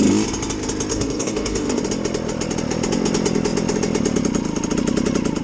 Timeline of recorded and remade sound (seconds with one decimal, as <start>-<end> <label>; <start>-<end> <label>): 0.0-0.9 recorded; 0.9-1.8 remade; 1.8-5.4 recorded